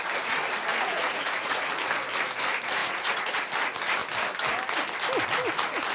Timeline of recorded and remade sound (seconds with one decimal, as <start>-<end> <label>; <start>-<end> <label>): 0.0-0.7 recorded; 0.7-1.6 remade; 1.6-2.8 recorded; 2.8-3.4 remade; 3.4-5.9 recorded